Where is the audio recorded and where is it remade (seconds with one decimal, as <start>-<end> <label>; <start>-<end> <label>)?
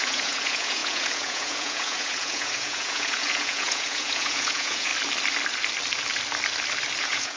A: 0.0-4.9 remade; 4.9-7.0 recorded; 7.0-7.4 remade